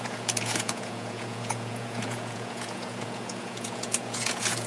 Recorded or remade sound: remade